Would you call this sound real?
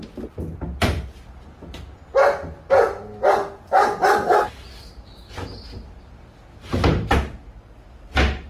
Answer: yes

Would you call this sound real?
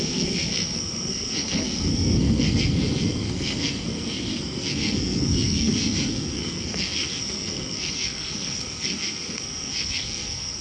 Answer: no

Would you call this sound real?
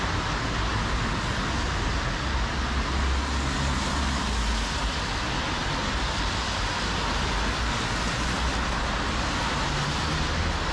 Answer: yes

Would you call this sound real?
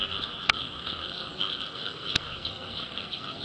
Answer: no